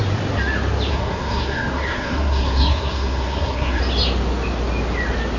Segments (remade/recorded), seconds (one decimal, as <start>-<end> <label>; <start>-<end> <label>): 0.0-0.9 recorded; 0.9-3.8 remade; 3.8-5.4 recorded